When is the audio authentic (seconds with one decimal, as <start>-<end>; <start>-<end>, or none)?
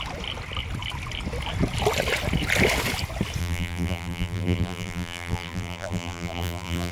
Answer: 0.0-3.4